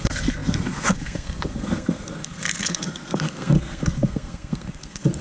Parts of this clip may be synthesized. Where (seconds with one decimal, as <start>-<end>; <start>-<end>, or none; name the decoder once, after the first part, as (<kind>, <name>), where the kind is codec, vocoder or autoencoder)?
0.0-5.2 (codec, SNAC)